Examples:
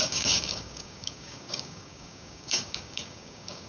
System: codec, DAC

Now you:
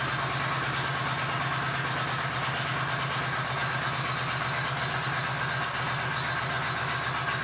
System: none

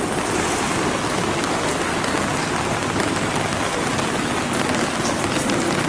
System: none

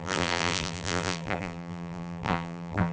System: vocoder, BigVGAN v2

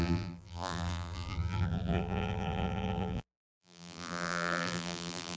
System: vocoder, BigVGAN v2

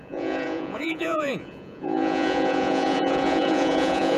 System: vocoder, Vocos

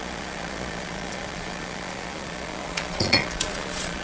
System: vocoder, Vocos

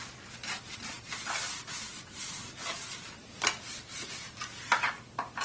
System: none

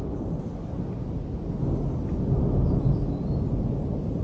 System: none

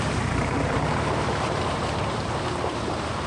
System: vocoder, BigVGAN v2